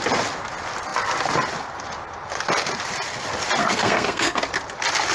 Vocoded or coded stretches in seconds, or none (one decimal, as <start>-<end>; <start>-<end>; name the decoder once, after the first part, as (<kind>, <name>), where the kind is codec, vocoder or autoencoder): 3.6-4.4 (codec, SNAC)